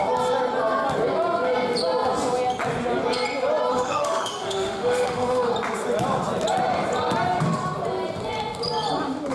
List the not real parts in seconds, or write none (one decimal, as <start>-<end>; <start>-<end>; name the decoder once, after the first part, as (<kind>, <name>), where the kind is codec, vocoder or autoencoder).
3.7-5.5 (autoencoder, DAC-VAE)